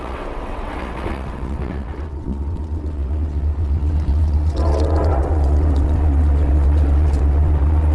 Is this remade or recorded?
remade